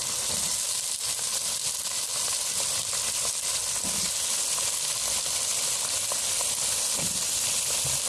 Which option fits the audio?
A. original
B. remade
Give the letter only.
A